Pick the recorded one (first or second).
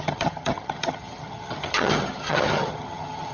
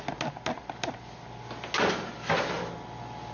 second